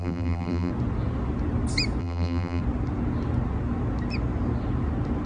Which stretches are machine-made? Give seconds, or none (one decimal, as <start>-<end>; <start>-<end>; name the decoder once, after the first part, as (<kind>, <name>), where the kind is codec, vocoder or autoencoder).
0.0-0.7 (vocoder, BigVGAN v2); 2.0-2.6